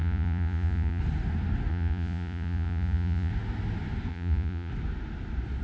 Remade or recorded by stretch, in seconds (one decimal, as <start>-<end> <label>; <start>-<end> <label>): 0.0-1.0 remade; 1.0-1.7 recorded; 1.7-3.3 remade; 3.3-4.1 recorded; 4.1-4.7 remade; 4.7-5.6 recorded